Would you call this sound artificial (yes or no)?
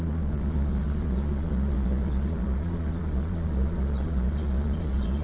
yes